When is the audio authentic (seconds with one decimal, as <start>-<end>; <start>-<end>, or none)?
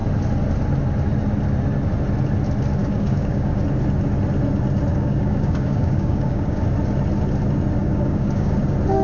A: 0.0-2.8; 3.6-4.9; 6.6-7.8; 8.6-9.0